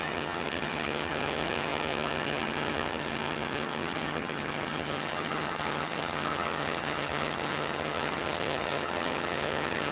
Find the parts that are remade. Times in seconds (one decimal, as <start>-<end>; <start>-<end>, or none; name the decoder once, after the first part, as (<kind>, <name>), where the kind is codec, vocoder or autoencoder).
0.0-9.9 (vocoder, HiFi-GAN)